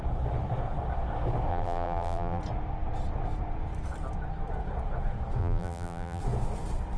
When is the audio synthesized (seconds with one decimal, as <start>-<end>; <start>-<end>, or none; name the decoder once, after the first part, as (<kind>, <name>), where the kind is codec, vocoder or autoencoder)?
1.5-2.4 (vocoder, BigVGAN v2); 5.4-6.2